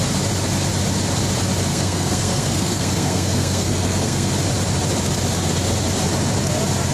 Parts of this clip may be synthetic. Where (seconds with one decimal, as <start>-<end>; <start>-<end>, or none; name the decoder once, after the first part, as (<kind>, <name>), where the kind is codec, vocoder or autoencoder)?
1.7-4.3 (codec, SNAC)